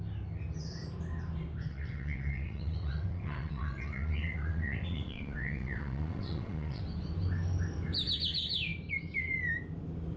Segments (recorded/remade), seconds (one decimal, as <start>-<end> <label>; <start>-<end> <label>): 0.0-1.7 recorded; 1.7-6.8 remade; 6.8-10.2 recorded